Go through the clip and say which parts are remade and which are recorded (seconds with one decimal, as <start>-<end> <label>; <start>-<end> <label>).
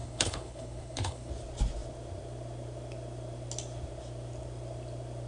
0.0-1.3 remade; 1.3-5.3 recorded